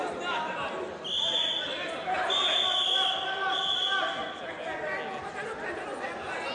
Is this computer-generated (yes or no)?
no